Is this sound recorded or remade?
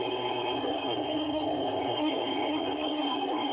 remade